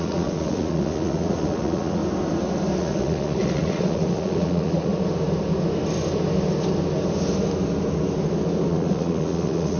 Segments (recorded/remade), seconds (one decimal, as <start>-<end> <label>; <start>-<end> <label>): 0.0-2.0 remade; 2.0-2.8 recorded; 2.8-4.9 remade; 4.9-8.7 recorded; 8.7-9.8 remade